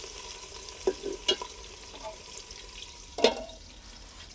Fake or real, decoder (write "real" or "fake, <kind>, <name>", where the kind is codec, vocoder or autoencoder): real